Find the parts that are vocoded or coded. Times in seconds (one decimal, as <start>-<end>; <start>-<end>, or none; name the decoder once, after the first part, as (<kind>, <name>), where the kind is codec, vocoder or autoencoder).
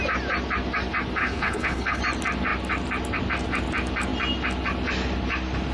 1.2-2.0 (codec, HILCodec)